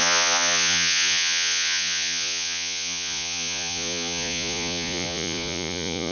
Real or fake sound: fake